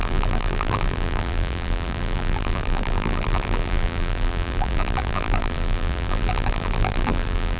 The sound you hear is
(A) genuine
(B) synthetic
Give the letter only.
B